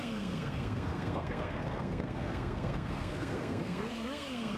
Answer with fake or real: fake